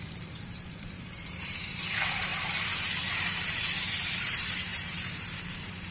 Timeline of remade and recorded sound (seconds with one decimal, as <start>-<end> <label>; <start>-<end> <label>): 0.0-2.3 remade; 2.3-3.1 recorded; 3.1-5.9 remade